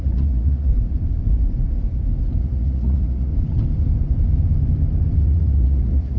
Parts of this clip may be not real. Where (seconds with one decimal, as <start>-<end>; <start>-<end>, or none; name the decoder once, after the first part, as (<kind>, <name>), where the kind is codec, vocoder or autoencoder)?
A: 0.0-0.7 (vocoder, Vocos); 2.4-3.3; 5.2-6.2